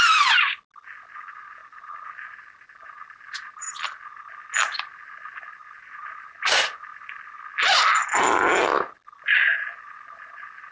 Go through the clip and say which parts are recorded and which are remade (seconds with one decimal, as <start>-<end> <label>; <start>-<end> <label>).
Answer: 0.0-10.7 recorded